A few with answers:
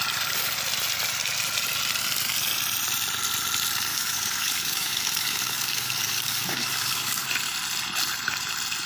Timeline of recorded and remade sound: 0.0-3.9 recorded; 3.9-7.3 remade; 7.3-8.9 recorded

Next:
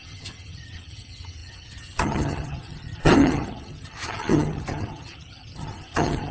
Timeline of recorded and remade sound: 0.0-6.3 remade

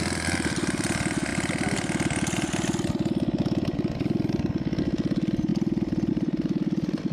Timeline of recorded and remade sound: 0.0-7.1 recorded